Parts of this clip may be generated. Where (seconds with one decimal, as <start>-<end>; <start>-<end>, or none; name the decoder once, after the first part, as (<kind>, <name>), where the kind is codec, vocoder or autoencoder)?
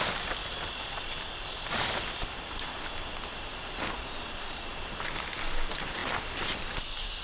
none